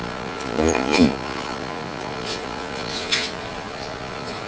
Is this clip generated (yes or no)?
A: yes